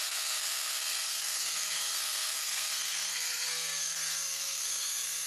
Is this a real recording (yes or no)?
no